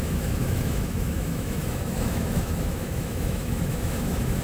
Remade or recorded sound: remade